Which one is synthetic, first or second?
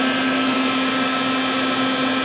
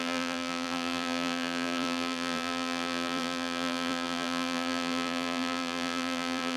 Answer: second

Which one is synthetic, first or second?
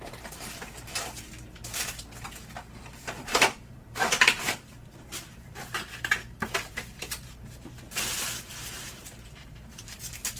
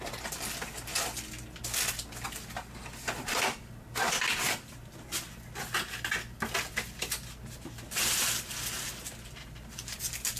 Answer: first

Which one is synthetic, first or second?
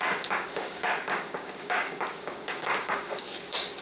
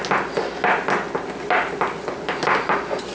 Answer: first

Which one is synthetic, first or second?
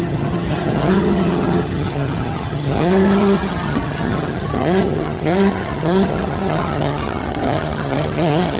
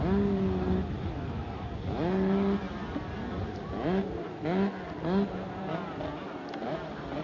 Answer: first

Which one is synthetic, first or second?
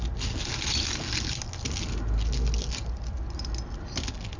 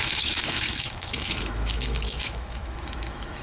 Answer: second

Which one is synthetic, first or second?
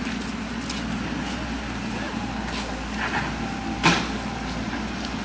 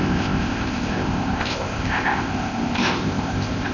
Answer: second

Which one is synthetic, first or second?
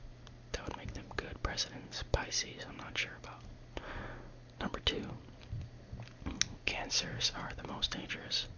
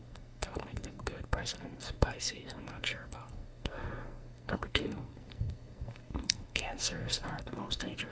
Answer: second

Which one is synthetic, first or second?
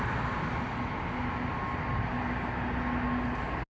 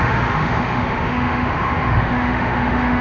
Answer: second